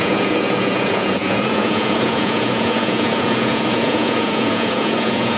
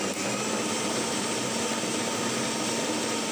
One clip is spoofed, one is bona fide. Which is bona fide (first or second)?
second